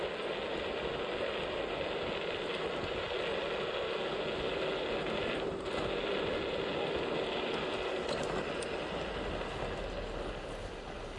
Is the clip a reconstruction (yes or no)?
no